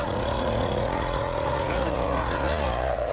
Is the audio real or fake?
fake